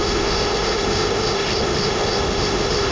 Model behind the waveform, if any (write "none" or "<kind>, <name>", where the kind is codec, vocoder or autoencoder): autoencoder, DAC-VAE